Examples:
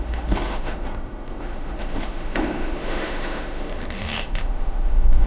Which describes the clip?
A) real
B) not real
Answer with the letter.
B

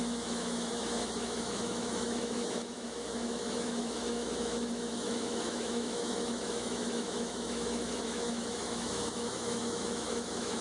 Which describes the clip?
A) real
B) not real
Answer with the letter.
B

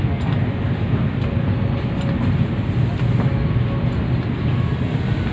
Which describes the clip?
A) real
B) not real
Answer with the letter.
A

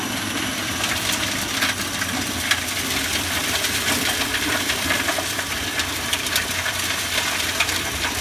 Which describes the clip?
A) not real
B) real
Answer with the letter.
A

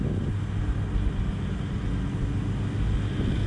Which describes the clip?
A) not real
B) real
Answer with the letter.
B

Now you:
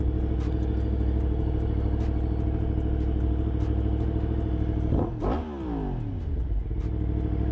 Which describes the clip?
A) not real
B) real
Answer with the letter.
B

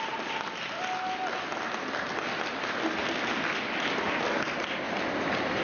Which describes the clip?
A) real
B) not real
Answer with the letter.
A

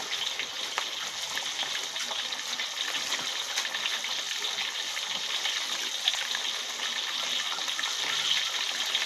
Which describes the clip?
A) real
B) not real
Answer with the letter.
A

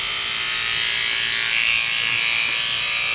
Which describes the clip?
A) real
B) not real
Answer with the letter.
A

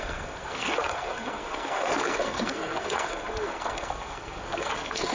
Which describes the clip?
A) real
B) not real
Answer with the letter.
B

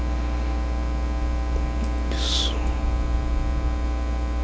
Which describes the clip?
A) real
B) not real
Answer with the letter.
A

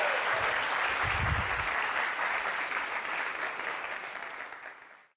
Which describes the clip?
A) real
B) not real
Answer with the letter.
A